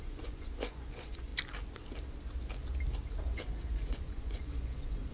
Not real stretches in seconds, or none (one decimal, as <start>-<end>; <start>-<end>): 0.0-1.3; 3.2-5.1